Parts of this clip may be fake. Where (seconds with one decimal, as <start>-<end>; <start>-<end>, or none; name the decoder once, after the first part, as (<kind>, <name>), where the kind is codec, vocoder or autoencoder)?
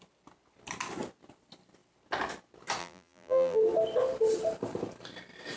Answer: 2.8-3.6 (vocoder, BigVGAN v2)